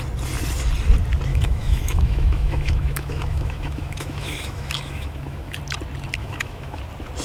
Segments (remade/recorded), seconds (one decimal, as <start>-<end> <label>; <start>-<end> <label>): 0.0-1.3 recorded; 1.3-5.6 remade; 5.6-6.2 recorded; 6.2-6.8 remade; 6.8-7.2 recorded